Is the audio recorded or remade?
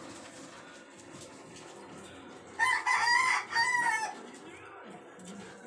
recorded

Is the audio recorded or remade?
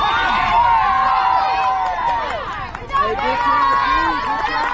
recorded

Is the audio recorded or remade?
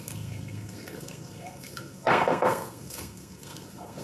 remade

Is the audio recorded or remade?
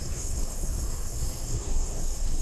remade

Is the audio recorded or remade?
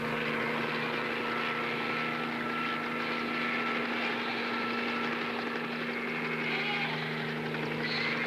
recorded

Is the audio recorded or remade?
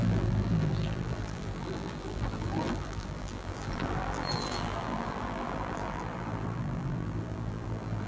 remade